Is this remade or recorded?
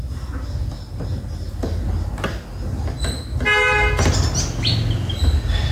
recorded